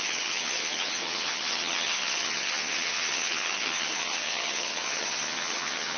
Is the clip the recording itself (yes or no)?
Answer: no